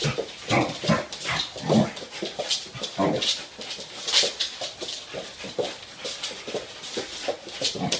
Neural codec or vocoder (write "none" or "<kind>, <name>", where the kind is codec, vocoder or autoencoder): none